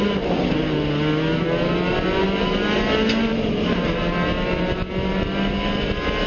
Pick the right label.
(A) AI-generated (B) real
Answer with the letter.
B